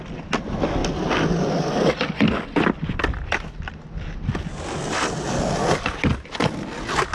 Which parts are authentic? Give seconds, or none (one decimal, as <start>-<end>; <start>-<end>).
0.0-7.1